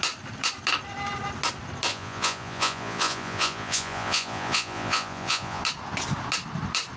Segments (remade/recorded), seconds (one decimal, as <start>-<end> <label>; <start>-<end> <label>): 0.0-1.9 recorded; 1.9-5.6 remade; 5.6-7.0 recorded